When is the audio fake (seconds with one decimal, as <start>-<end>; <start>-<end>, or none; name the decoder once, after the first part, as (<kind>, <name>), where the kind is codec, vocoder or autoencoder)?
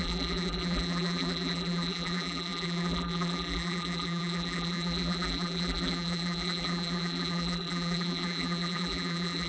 0.0-9.5 (vocoder, BigVGAN v2)